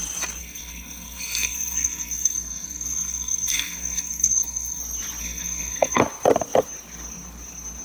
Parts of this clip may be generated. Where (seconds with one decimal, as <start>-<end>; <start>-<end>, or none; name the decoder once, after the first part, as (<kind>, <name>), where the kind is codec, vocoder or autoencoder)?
0.4-4.8 (codec, SNAC); 5.2-6.0